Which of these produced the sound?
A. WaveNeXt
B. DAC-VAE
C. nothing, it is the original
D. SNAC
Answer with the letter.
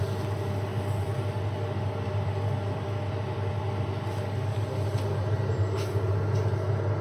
C